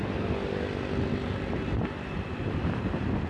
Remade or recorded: recorded